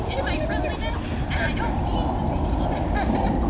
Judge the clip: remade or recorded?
recorded